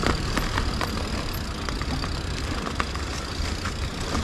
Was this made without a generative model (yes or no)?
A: yes